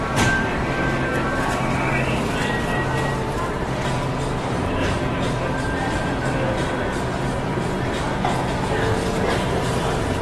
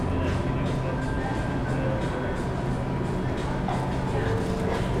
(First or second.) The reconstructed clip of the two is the first